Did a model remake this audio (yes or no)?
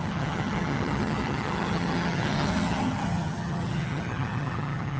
yes